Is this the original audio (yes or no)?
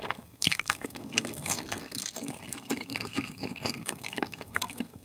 no